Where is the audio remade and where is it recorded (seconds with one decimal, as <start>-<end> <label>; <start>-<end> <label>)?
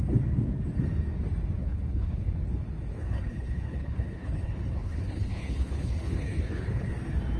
0.0-1.6 recorded; 1.6-2.3 remade; 2.3-2.9 recorded; 2.9-6.9 remade; 6.9-7.4 recorded